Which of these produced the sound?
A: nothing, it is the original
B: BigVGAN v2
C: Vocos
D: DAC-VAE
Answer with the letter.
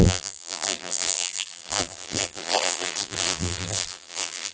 B